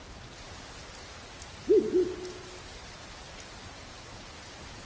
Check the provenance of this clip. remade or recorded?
recorded